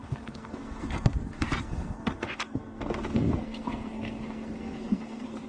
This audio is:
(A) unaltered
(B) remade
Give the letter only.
B